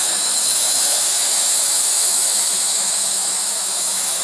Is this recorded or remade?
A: remade